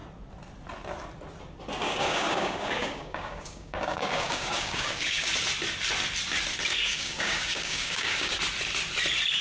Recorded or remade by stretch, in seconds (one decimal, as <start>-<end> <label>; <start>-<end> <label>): 0.0-1.8 recorded; 1.8-5.3 remade; 5.3-6.7 recorded; 6.7-8.4 remade; 8.4-9.4 recorded